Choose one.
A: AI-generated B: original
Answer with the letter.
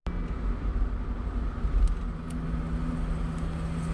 B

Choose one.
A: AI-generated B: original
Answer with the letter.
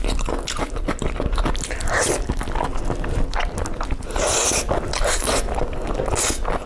B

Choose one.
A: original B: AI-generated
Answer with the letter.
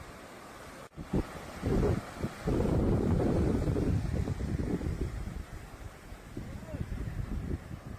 A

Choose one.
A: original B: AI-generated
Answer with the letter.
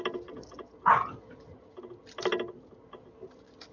A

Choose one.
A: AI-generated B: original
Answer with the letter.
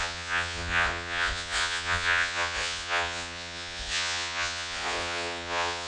A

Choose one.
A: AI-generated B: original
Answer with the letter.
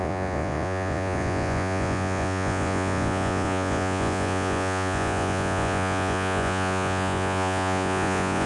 A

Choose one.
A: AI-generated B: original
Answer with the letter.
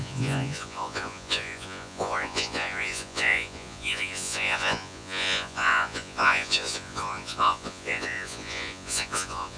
A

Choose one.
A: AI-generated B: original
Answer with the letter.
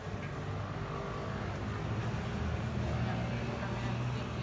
B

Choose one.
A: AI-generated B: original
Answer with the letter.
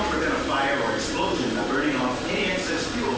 B